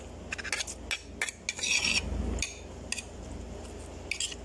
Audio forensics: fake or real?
real